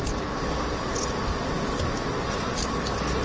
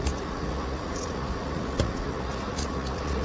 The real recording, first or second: first